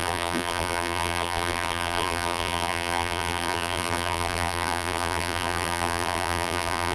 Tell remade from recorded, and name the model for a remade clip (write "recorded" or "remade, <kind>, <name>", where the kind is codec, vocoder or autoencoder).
remade, vocoder, BigVGAN v2